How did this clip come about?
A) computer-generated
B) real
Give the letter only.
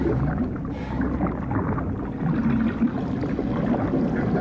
B